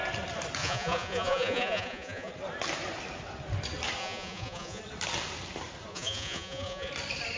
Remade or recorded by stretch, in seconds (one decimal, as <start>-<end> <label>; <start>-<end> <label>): 0.0-0.6 recorded; 0.6-2.3 remade; 2.3-4.0 recorded; 4.0-4.8 remade; 4.8-5.9 recorded; 5.9-6.9 remade; 6.9-7.4 recorded